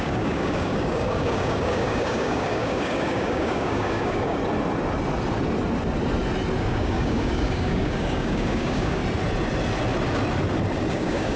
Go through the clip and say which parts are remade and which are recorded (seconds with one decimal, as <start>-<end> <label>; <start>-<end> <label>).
0.0-4.4 remade; 4.4-6.6 recorded; 6.6-9.0 remade; 9.0-10.9 recorded; 10.9-11.4 remade